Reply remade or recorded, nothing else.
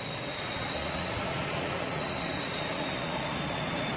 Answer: remade